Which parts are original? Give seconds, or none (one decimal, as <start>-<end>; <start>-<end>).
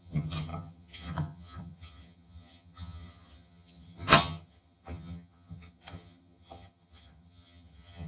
none